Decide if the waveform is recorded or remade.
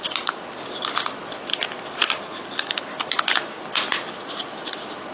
recorded